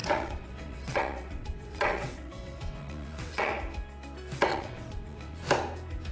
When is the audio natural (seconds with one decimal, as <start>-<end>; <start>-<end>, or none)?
3.5-4.5; 5.4-6.1